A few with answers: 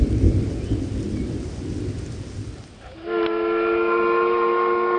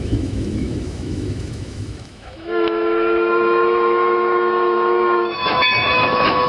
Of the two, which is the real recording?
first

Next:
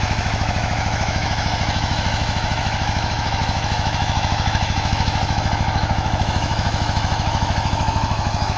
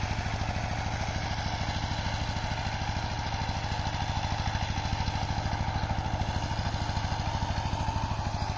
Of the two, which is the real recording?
second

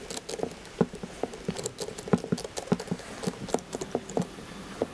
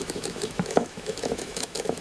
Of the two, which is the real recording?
first